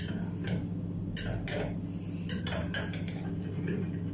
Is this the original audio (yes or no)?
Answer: yes